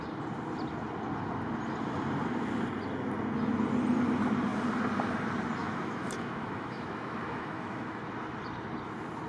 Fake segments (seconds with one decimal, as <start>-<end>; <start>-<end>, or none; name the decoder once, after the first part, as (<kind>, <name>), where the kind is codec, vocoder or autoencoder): 5.6-8.0 (autoencoder, DAC-VAE)

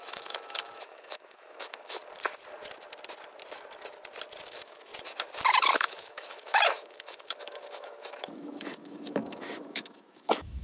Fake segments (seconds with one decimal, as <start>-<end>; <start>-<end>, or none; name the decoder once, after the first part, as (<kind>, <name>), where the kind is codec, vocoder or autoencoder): 0.0-2.0 (autoencoder, DAC-VAE); 4.5-4.9; 5.5-10.6